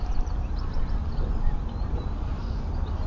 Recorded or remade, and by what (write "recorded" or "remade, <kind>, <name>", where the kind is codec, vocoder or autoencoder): remade, vocoder, BigVGAN v2